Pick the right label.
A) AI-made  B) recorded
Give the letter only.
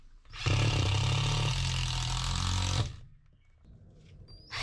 B